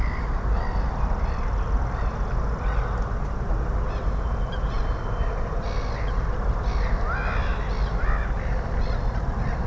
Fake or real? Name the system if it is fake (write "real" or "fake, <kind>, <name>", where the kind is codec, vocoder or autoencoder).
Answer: real